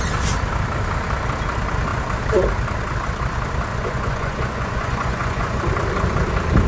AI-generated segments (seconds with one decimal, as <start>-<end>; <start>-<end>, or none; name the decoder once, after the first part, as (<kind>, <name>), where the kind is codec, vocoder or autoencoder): 3.7-5.6 (vocoder, Vocos)